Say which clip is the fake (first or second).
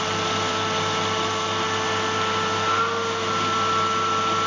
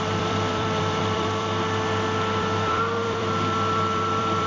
second